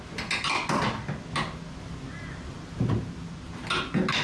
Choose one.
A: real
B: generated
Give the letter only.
A